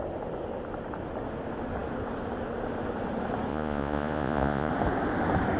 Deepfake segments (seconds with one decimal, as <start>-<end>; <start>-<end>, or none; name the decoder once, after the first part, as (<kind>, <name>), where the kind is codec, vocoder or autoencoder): 3.5-4.7 (vocoder, Vocos)